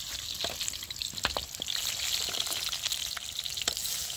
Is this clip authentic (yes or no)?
yes